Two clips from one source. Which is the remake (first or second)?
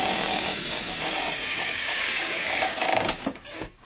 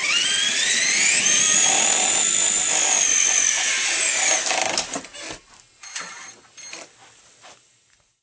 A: first